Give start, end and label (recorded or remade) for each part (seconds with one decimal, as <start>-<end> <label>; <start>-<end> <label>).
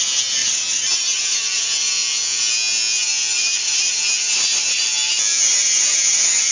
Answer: 0.0-0.4 recorded; 0.4-2.4 remade; 2.4-3.1 recorded; 3.1-6.5 remade